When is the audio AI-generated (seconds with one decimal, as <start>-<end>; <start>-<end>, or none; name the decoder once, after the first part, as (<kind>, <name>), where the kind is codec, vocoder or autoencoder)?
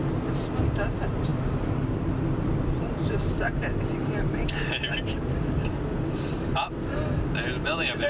none